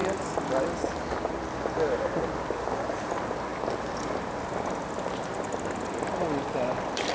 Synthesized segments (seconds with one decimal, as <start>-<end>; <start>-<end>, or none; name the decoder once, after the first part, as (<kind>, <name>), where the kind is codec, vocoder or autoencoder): none